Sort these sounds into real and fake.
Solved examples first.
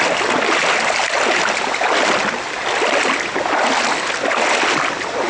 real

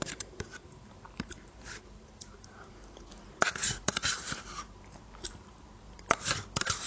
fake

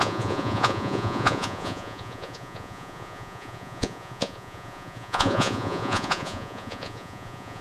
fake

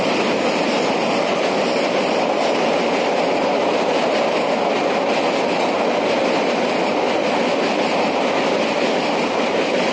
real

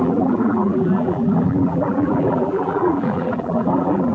fake